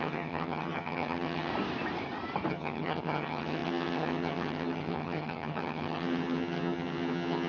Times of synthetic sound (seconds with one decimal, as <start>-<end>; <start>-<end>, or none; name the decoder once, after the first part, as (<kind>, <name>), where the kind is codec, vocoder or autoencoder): 0.0-1.5 (vocoder, HiFi-GAN); 2.5-7.5